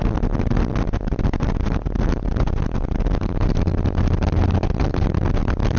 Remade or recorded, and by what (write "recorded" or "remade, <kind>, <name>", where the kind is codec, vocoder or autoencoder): recorded